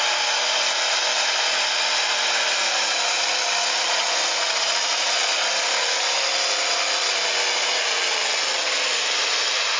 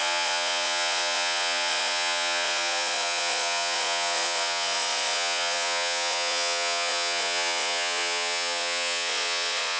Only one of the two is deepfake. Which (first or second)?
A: second